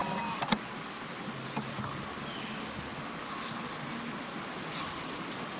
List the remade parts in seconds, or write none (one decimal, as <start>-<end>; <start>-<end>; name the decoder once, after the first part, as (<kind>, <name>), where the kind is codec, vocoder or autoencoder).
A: none